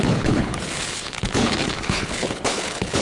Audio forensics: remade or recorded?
remade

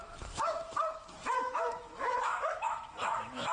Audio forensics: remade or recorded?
remade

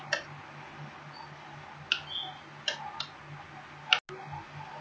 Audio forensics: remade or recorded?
recorded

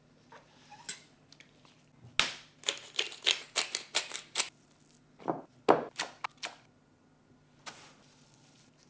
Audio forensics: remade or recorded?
recorded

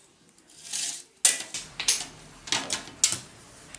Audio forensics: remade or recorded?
recorded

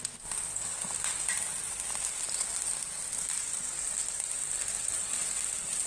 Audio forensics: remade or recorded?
recorded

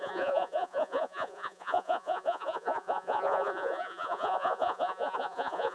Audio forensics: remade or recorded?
remade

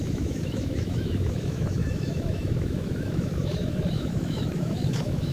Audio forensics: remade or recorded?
remade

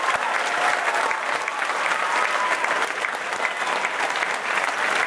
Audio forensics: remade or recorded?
recorded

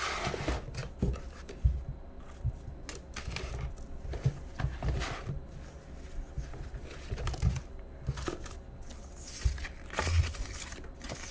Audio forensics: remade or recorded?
recorded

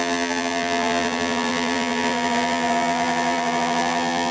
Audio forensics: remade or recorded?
remade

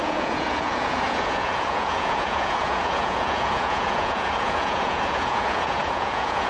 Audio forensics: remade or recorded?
remade